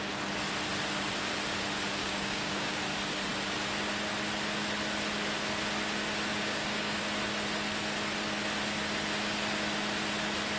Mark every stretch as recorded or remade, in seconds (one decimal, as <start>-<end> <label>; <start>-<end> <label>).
0.0-2.0 recorded; 2.0-2.8 remade; 2.8-6.3 recorded; 6.3-7.0 remade; 7.0-10.6 recorded